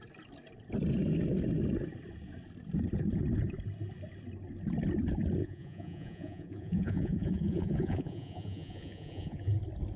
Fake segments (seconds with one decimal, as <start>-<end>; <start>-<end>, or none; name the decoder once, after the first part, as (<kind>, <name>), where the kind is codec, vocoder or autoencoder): 5.4-9.6 (vocoder, Vocos)